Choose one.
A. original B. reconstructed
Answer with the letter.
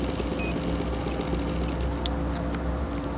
A